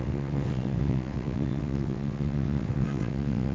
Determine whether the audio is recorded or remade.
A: remade